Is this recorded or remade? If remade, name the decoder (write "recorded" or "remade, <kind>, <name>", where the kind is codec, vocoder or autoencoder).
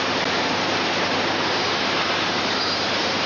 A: recorded